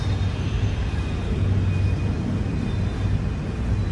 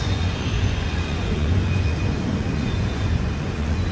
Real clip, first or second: first